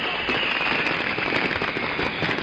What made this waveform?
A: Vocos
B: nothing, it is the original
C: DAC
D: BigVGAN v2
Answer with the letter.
B